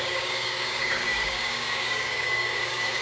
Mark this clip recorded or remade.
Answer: remade